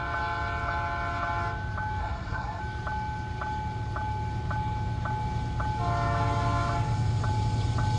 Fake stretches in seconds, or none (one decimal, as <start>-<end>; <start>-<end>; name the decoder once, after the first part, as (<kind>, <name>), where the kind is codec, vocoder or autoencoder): 2.0-2.6 (codec, SNAC)